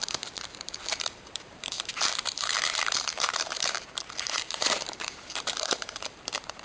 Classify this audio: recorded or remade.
remade